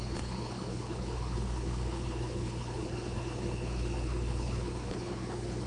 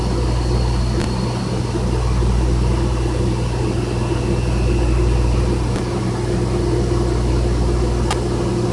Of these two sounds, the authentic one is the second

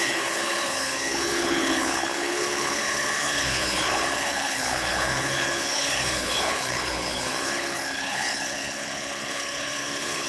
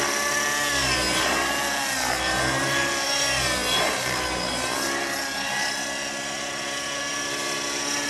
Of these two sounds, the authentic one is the second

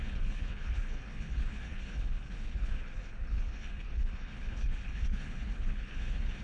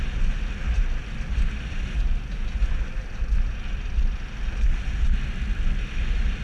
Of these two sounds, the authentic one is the second